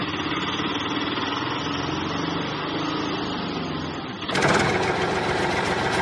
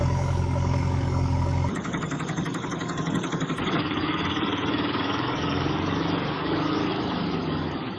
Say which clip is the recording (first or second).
first